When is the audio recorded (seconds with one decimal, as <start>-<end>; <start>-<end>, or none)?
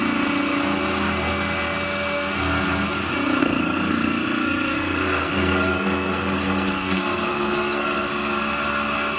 0.0-3.4; 8.1-9.2